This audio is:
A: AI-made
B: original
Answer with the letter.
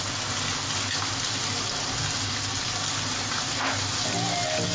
B